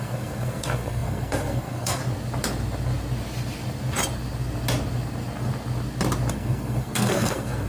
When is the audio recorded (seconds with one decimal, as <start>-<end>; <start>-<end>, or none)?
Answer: 2.0-6.3